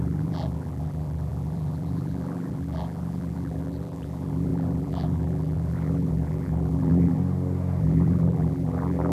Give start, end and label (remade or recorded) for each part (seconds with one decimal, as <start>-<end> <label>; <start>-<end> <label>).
0.0-7.2 remade; 7.2-7.8 recorded; 7.8-9.1 remade